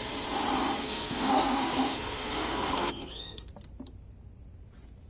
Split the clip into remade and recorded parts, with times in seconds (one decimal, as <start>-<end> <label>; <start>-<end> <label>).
0.0-0.8 recorded; 0.8-3.5 remade; 3.5-5.1 recorded